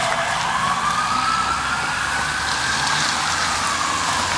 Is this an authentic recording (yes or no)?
yes